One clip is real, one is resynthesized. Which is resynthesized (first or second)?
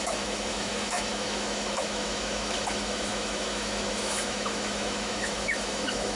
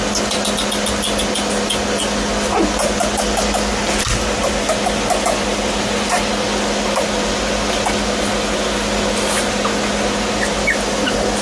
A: first